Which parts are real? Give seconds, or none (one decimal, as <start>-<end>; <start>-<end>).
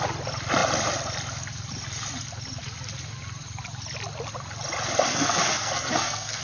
0.0-5.1